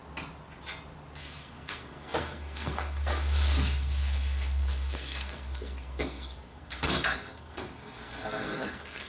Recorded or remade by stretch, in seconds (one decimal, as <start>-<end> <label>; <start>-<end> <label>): 0.0-1.2 recorded; 1.2-9.1 remade